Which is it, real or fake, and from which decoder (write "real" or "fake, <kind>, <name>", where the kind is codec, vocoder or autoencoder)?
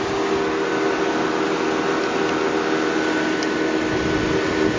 real